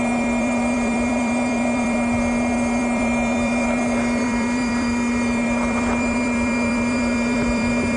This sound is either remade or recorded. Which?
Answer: remade